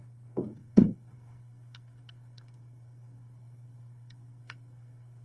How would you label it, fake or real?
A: fake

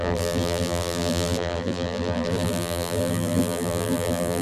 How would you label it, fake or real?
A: fake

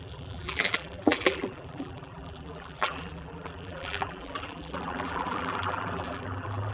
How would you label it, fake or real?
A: fake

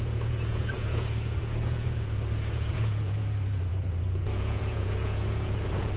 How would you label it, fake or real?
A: fake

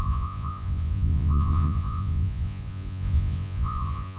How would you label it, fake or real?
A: fake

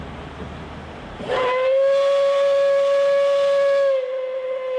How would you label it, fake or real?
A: real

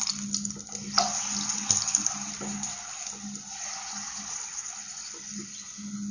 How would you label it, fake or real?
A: real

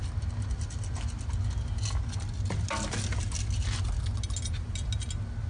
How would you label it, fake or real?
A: real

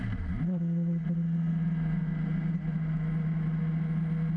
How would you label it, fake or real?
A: real